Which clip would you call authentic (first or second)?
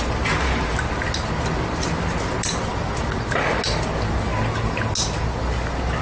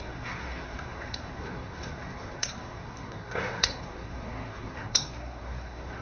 first